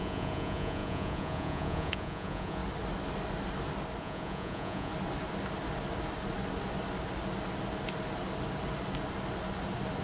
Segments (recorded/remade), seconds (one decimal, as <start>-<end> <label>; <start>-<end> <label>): 0.0-2.6 remade; 2.6-4.0 recorded; 4.0-4.9 remade; 4.9-10.0 recorded